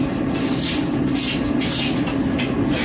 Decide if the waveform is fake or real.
real